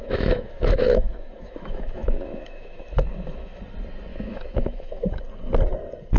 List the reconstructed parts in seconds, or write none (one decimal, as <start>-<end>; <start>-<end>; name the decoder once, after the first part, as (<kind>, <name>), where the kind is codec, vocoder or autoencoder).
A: 0.0-3.6 (autoencoder, DAC-VAE); 4.1-5.2